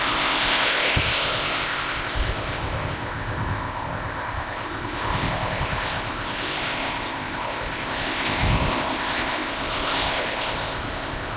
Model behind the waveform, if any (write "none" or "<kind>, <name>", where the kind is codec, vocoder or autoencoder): codec, ZipCodec